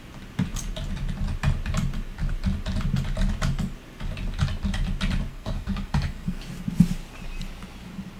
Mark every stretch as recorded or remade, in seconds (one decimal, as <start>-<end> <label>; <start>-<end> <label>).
0.0-5.3 recorded; 5.3-6.4 remade; 6.4-8.2 recorded